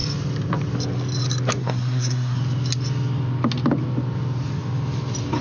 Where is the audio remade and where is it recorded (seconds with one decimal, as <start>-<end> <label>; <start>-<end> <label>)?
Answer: 0.0-1.6 recorded; 1.6-2.4 remade; 2.4-5.4 recorded